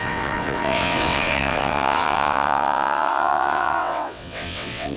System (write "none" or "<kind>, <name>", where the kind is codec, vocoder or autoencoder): vocoder, WaveNeXt